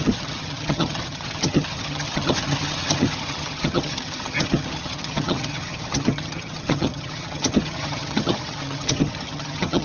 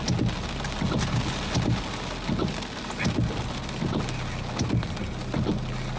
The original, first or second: second